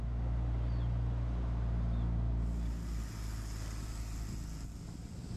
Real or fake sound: real